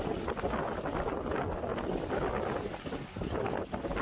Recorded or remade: recorded